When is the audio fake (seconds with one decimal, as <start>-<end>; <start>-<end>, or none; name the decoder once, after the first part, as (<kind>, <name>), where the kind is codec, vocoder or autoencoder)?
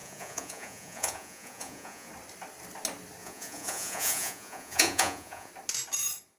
0.0-2.1 (vocoder, Vocos); 3.2-5.5